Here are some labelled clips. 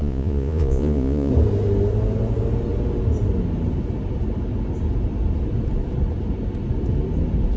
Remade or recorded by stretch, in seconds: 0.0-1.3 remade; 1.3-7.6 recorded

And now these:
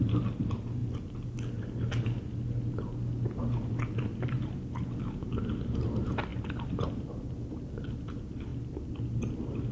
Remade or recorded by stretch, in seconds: 0.0-9.7 recorded

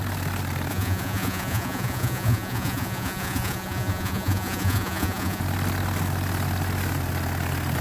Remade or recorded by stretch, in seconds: 0.0-0.7 recorded; 0.7-5.4 remade; 5.4-7.8 recorded

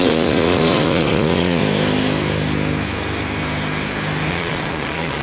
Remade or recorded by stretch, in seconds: 0.0-1.6 remade; 1.6-4.3 recorded; 4.3-5.2 remade

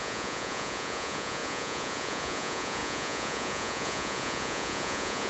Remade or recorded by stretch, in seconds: 0.0-5.3 remade

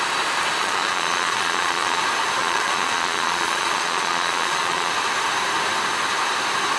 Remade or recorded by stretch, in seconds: 0.0-0.6 recorded; 0.6-2.0 remade; 2.0-2.4 recorded; 2.4-4.9 remade; 4.9-6.8 recorded

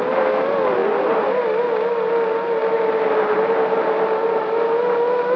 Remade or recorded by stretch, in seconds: 0.0-5.4 recorded